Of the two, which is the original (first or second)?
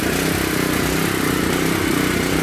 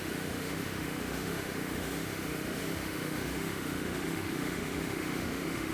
first